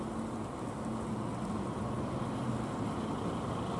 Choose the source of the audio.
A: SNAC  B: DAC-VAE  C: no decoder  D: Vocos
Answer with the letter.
C